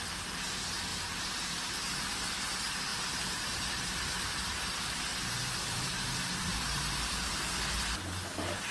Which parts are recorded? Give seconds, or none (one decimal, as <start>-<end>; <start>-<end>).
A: 0.0-0.9; 2.3-2.9; 3.5-5.1; 7.4-8.7